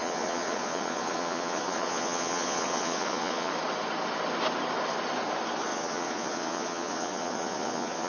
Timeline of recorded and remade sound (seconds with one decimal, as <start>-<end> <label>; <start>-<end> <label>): 0.0-3.5 remade; 3.5-5.7 recorded; 5.7-8.1 remade

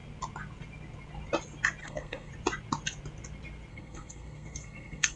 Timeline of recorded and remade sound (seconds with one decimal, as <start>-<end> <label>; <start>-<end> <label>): 0.0-1.8 recorded; 1.8-2.3 remade; 2.3-3.7 recorded; 3.7-5.2 remade

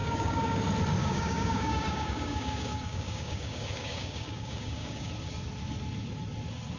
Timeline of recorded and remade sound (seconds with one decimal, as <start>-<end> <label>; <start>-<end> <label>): 0.0-0.6 remade; 0.6-1.0 recorded; 1.0-5.1 remade; 5.1-6.8 recorded

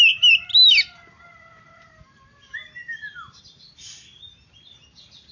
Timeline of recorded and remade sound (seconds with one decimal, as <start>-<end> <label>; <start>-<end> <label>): 0.0-5.3 recorded

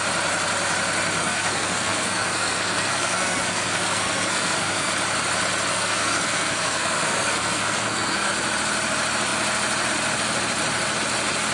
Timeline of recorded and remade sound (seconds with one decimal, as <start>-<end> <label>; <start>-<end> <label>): 0.0-1.2 recorded; 1.2-4.9 remade; 4.9-5.7 recorded; 5.7-8.3 remade; 8.3-11.5 recorded

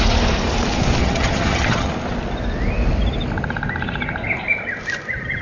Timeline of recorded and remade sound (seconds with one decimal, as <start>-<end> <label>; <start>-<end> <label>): 0.0-1.0 recorded; 1.0-1.9 remade; 1.9-5.4 recorded

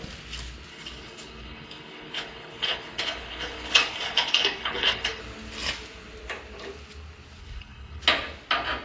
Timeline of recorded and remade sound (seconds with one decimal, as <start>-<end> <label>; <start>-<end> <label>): 0.0-0.7 recorded; 0.7-5.2 remade; 5.2-7.4 recorded; 7.4-8.0 remade; 8.0-8.8 recorded

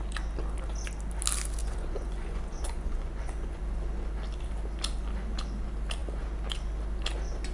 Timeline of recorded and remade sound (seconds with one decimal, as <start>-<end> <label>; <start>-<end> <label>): 0.0-1.6 recorded; 1.6-3.6 remade; 3.6-7.5 recorded